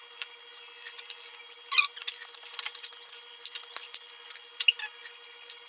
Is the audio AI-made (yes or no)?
no